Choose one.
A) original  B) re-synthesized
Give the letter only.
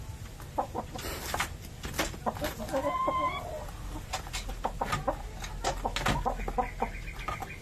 A